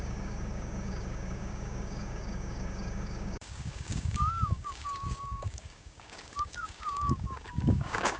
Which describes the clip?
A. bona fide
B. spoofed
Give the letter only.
B